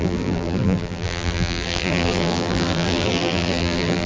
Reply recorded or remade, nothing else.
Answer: remade